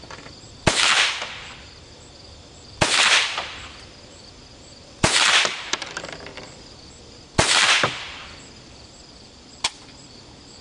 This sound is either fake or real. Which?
fake